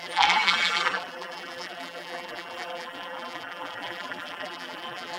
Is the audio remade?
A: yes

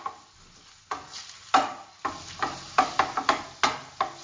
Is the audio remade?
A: no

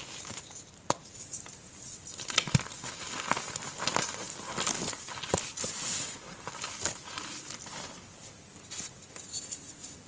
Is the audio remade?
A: no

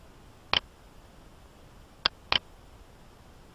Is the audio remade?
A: no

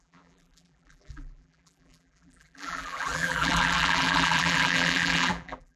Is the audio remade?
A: yes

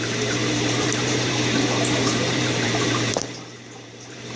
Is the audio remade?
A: yes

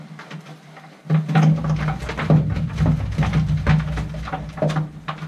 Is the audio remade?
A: no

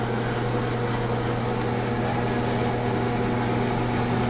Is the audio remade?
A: no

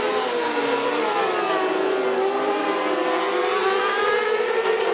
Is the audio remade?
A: no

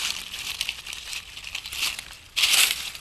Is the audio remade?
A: yes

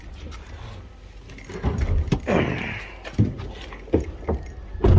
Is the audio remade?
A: no